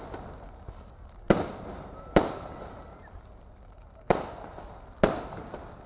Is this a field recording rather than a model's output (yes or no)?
yes